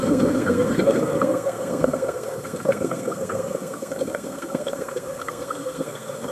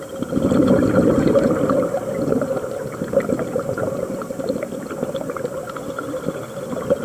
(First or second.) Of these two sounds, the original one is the second